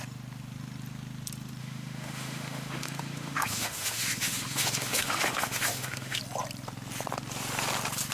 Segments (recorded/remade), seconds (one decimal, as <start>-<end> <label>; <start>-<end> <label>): 0.0-1.6 recorded; 1.6-6.2 remade; 6.2-8.1 recorded